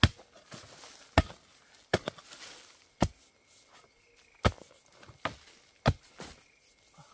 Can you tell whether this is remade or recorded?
recorded